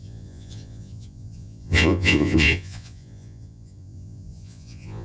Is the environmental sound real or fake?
fake